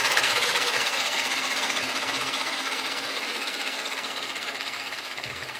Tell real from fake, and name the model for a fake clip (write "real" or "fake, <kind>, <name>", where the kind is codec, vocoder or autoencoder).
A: fake, codec, SNAC